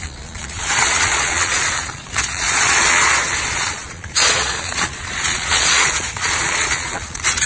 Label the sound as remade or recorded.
remade